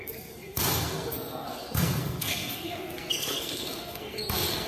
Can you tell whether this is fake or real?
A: fake